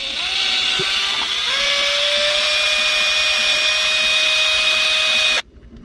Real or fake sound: real